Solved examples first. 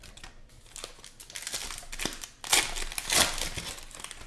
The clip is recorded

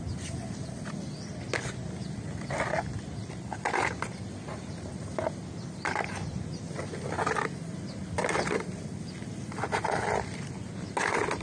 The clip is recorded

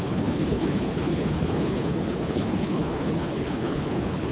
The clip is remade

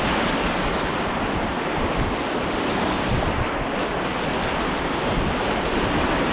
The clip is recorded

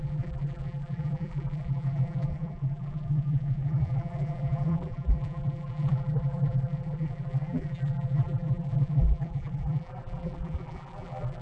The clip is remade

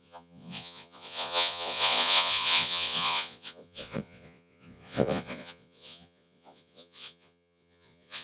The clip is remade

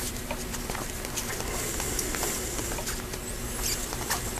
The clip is recorded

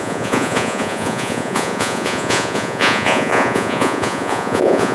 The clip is remade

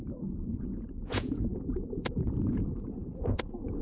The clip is remade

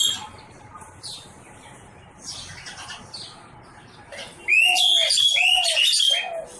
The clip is recorded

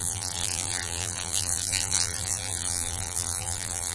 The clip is remade